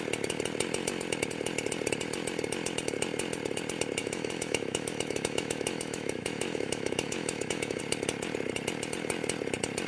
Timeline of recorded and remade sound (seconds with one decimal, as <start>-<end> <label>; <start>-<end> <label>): 0.0-4.0 recorded; 4.0-7.8 remade; 7.8-9.9 recorded